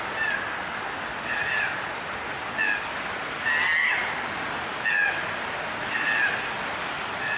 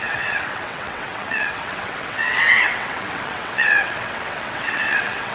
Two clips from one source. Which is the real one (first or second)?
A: first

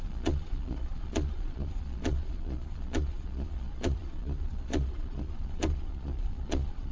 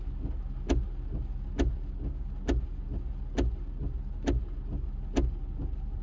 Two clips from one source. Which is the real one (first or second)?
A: second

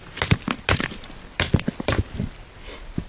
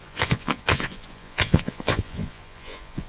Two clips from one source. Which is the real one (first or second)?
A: first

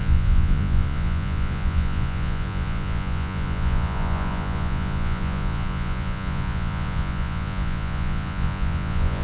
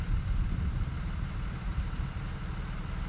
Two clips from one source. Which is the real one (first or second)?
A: second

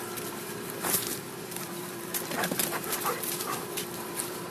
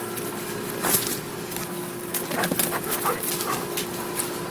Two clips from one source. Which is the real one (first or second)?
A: second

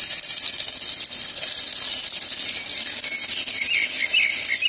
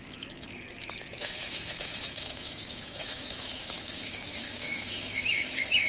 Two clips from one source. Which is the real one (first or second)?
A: first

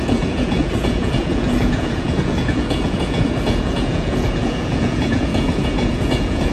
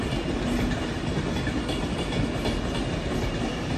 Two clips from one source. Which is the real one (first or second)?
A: second